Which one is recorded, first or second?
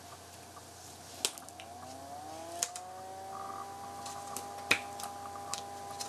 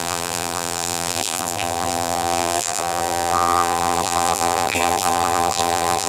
first